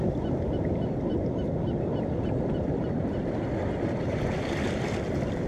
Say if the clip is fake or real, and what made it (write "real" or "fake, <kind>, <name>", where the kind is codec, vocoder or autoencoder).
real